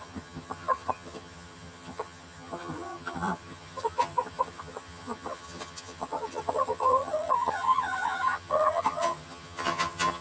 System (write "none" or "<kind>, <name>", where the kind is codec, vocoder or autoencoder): vocoder, HiFi-GAN